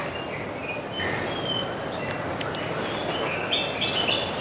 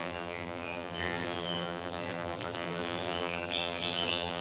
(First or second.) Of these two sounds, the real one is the first